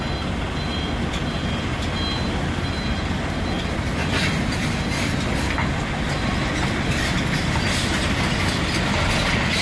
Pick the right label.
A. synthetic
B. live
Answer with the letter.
B